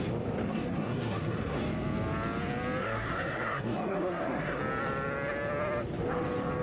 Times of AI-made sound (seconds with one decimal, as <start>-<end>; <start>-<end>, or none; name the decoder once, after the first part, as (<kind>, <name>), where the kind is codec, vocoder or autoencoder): 0.5-1.6 (codec, SNAC); 2.8-4.6